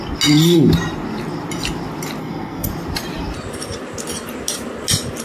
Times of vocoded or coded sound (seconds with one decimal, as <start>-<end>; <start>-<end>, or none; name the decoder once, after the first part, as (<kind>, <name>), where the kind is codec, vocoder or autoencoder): 2.2-2.7 (codec, SNAC)